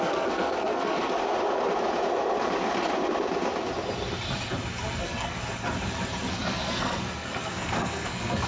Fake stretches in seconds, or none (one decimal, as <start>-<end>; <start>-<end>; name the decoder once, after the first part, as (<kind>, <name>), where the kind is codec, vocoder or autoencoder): 0.0-1.2 (codec, SNAC); 5.0-5.4; 6.3-8.5